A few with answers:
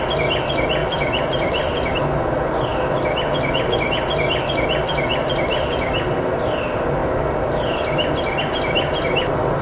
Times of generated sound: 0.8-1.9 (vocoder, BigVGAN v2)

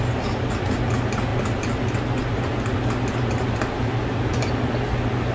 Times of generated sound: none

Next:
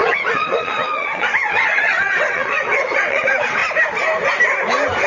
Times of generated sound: 0.0-3.6 (vocoder, WaveNeXt)